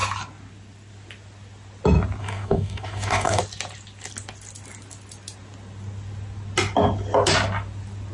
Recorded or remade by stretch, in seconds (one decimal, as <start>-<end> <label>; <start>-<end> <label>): 0.0-2.2 recorded; 2.2-3.4 remade; 3.4-8.1 recorded